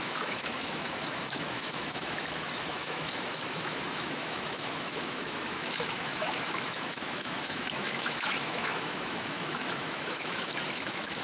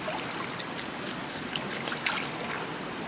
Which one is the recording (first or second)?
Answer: second